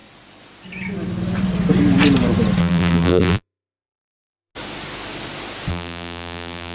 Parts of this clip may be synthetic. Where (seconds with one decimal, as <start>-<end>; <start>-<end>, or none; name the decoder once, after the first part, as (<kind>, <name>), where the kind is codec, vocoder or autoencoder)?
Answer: 2.6-4.5 (vocoder, BigVGAN v2); 5.7-6.7